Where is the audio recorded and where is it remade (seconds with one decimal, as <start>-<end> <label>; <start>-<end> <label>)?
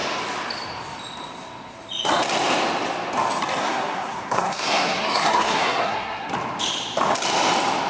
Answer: 0.0-3.6 recorded; 3.6-6.3 remade; 6.3-7.9 recorded